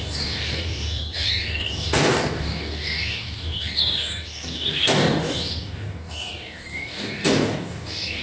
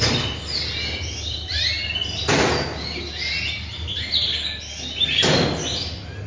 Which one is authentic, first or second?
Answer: second